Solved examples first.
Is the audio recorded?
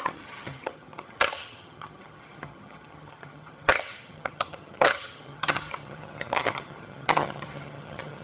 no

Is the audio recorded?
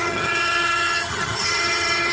no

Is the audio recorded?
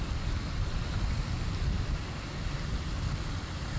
yes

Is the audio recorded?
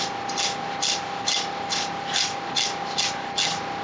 yes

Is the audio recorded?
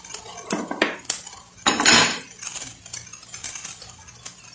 yes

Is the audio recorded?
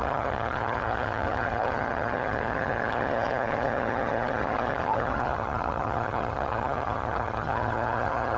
no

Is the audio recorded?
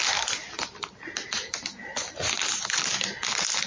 yes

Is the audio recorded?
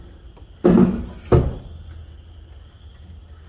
yes